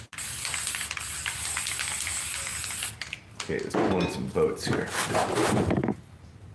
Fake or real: real